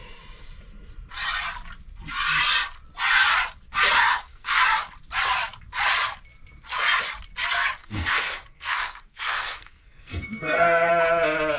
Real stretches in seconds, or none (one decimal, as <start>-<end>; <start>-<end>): 0.0-4.1; 4.6-7.8; 10.9-11.6